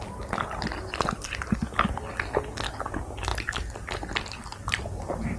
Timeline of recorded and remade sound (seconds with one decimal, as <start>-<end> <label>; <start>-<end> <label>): 0.0-5.4 recorded